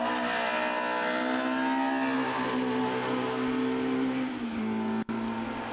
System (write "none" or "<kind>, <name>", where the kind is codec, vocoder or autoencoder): none